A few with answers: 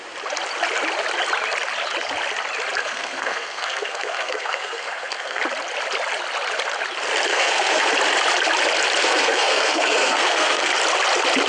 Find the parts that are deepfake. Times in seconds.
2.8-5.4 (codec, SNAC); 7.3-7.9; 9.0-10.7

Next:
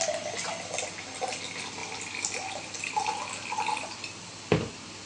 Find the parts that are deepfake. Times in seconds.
none

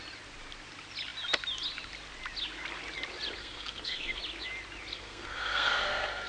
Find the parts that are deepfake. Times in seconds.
3.4-4.2 (codec, SNAC); 4.9-6.3

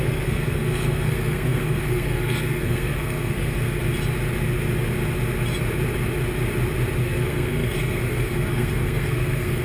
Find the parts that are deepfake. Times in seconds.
0.0-3.8 (codec, SNAC); 7.0-9.6

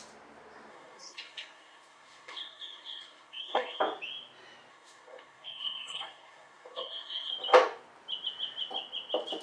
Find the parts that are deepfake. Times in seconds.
0.7-3.8 (codec, SNAC); 4.7-7.3

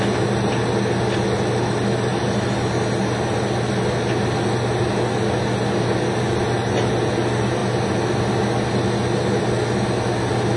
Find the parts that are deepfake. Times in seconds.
none

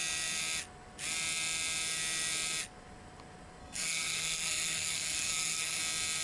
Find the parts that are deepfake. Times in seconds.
3.6-5.8 (codec, SNAC)

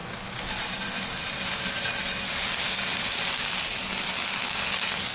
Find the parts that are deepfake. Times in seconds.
none